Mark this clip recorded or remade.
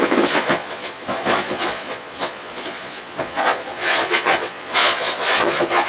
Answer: remade